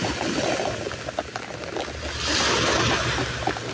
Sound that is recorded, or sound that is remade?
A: recorded